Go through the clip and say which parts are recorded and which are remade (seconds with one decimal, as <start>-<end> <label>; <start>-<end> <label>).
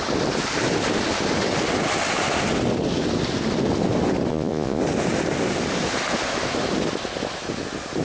0.0-4.3 recorded; 4.3-4.8 remade; 4.8-8.0 recorded